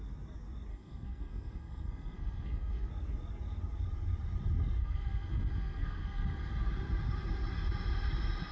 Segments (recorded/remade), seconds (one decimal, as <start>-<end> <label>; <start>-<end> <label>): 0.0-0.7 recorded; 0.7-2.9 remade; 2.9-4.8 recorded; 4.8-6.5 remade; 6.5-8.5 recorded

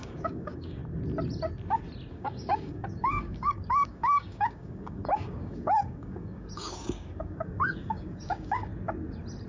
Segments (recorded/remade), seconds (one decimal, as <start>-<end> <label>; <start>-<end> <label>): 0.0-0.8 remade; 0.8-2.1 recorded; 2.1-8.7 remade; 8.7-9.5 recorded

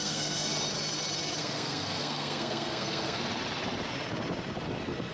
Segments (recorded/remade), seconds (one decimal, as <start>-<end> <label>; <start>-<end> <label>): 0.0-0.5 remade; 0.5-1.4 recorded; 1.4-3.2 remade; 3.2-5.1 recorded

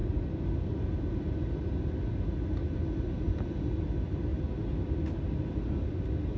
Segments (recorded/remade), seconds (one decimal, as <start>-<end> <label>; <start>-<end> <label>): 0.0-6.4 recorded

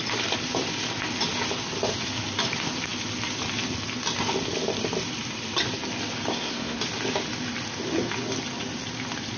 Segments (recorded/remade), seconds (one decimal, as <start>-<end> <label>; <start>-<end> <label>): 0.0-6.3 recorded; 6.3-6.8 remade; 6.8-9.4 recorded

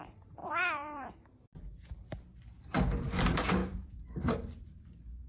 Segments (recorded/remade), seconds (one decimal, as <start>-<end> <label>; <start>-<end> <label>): 0.0-5.3 remade